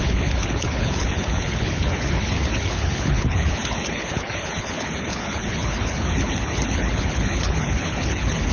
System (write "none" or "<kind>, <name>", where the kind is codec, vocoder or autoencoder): codec, HILCodec